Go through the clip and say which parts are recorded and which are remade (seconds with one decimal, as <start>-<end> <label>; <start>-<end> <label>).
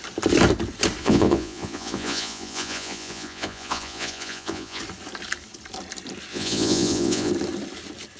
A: 0.0-1.0 recorded; 1.0-4.8 remade; 4.8-6.3 recorded; 6.3-7.3 remade; 7.3-8.2 recorded